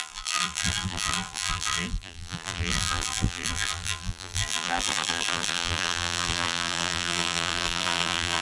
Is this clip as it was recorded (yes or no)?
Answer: no